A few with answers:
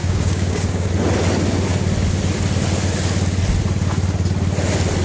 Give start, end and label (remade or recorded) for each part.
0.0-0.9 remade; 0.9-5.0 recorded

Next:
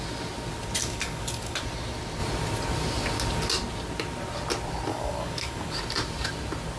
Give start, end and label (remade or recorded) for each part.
0.0-0.8 recorded; 0.8-1.6 remade; 1.6-4.9 recorded; 4.9-5.8 remade; 5.8-6.8 recorded